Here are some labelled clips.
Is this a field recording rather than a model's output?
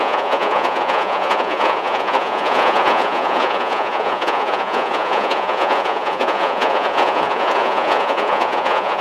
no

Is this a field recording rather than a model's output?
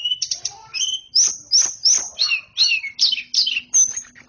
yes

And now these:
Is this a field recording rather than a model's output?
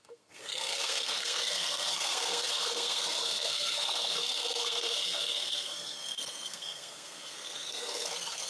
no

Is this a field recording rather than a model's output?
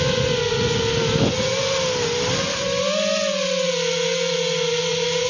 yes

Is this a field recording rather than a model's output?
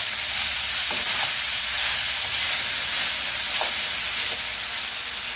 yes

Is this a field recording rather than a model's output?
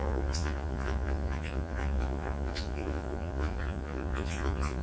no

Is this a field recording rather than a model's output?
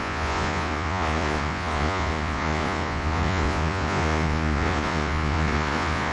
no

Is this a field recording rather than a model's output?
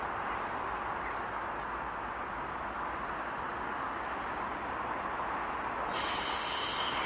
yes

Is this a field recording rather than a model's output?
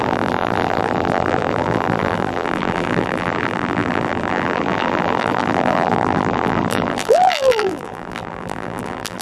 no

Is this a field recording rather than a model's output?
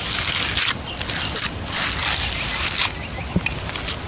yes